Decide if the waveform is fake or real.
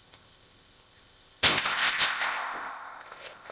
fake